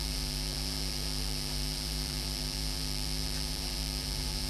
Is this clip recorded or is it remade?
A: remade